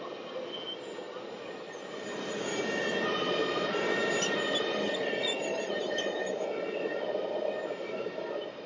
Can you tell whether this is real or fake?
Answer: real